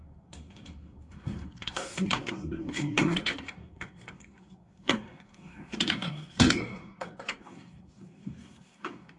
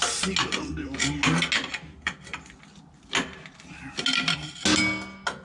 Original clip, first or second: second